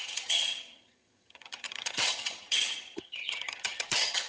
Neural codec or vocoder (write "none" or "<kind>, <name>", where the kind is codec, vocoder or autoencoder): vocoder, HiFi-GAN